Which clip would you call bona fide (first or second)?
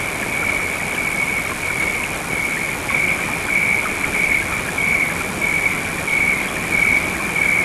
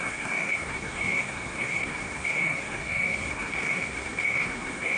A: first